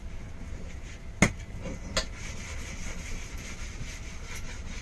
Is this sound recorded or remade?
recorded